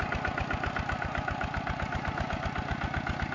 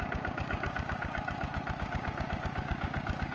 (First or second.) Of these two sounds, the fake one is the second